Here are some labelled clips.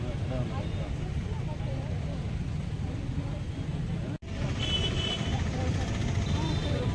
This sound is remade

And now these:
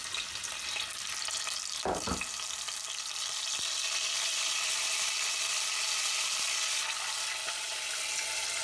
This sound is recorded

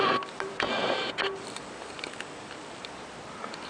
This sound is remade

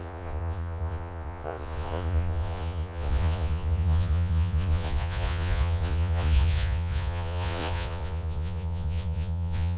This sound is remade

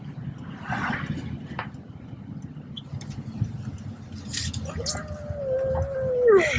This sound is recorded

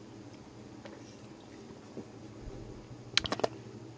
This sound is recorded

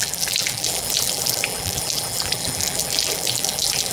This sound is remade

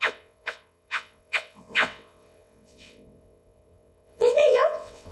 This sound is remade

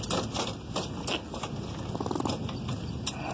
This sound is recorded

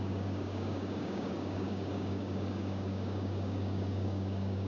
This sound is remade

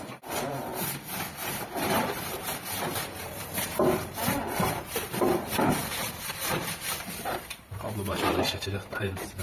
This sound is remade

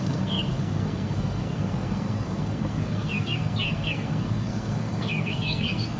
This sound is remade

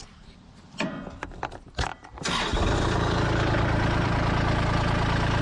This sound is remade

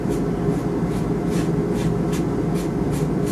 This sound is recorded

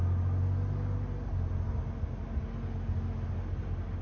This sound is recorded